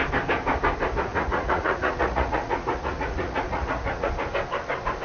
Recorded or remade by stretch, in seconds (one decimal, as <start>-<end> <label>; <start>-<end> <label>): 0.0-1.1 recorded; 1.1-4.1 remade; 4.1-5.0 recorded